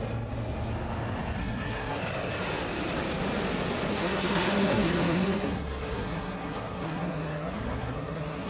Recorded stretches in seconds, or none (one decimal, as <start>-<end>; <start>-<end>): 0.0-1.4; 2.0-3.9